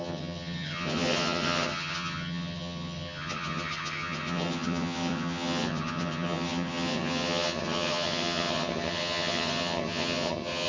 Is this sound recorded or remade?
remade